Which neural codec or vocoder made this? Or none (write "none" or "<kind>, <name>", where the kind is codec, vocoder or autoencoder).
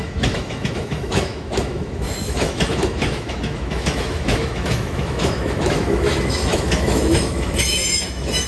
autoencoder, DAC-VAE